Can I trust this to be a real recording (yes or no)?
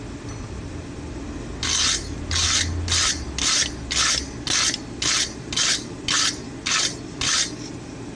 yes